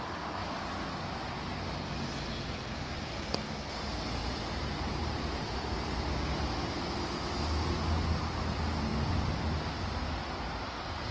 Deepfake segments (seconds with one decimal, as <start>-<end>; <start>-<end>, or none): 1.5-3.4; 8.9-9.5